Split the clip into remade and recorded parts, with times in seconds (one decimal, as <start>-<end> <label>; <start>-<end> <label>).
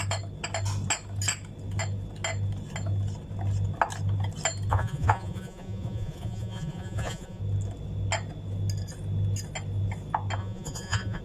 0.0-4.7 recorded; 4.7-7.4 remade; 7.4-10.4 recorded; 10.4-11.2 remade